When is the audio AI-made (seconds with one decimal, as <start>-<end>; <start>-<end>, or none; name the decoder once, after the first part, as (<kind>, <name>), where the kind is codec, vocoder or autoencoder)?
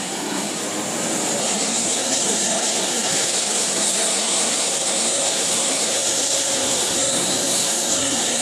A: 0.0-0.6 (codec, SNAC); 1.4-8.4